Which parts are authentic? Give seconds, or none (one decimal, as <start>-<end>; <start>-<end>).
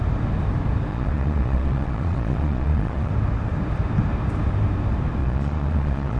0.0-0.9; 3.1-5.2